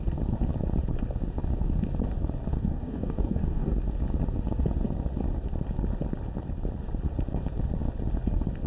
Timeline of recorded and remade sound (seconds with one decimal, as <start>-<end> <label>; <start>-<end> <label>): 0.0-2.5 recorded; 2.5-3.8 remade; 3.8-8.7 recorded